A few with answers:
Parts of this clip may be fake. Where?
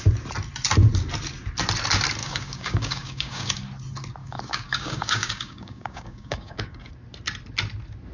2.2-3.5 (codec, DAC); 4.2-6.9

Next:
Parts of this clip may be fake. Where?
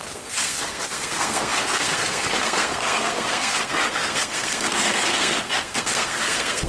0.0-6.7 (codec, SNAC)